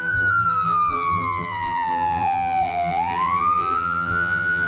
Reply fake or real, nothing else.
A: fake